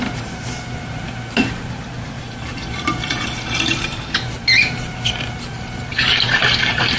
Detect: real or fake fake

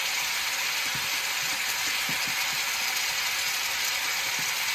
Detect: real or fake real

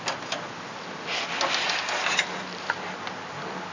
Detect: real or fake real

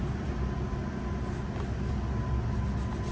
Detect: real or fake real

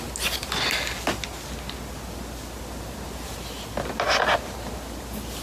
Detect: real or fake real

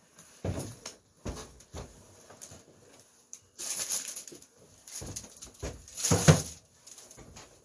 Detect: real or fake real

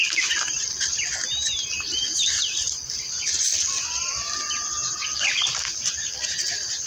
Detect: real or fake real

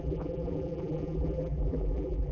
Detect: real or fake fake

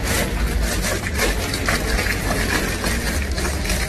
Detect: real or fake real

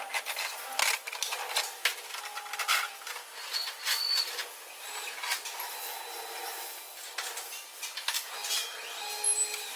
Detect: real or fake real